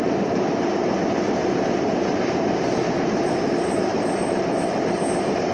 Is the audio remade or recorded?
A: remade